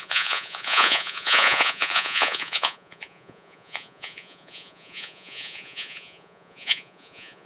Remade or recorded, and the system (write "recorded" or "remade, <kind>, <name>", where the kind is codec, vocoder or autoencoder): remade, vocoder, Vocos